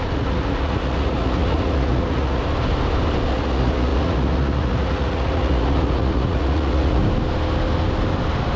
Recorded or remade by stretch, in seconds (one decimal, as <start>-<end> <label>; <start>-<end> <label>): 0.0-2.4 remade; 2.4-3.3 recorded; 3.3-7.0 remade; 7.0-8.6 recorded